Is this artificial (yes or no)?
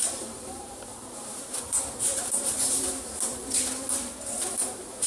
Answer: yes